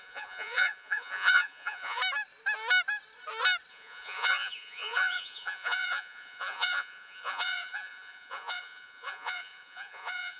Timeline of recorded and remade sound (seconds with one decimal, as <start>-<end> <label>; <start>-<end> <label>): 0.0-2.0 remade; 2.0-3.7 recorded; 3.7-10.4 remade